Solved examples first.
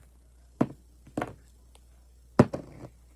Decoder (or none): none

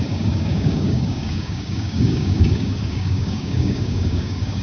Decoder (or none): codec, DAC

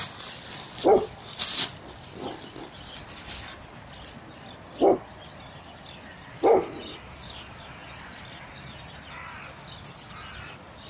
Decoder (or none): none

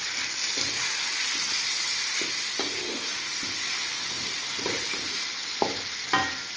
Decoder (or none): none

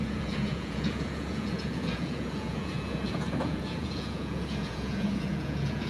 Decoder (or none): vocoder, Vocos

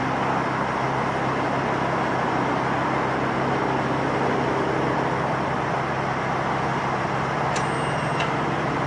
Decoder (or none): none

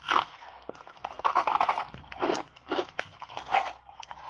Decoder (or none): codec, SNAC